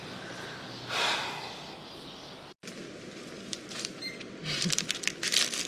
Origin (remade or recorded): recorded